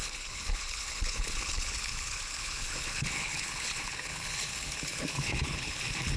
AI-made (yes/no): yes